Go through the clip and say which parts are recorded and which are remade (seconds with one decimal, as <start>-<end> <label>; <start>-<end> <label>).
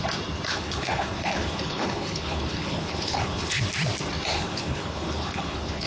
0.0-0.5 recorded; 0.5-3.6 remade; 3.6-4.3 recorded; 4.3-5.9 remade